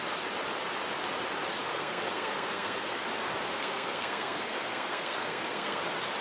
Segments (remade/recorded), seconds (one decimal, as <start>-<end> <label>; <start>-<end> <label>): 0.0-1.7 recorded; 1.7-3.0 remade; 3.0-3.4 recorded; 3.4-5.8 remade; 5.8-6.2 recorded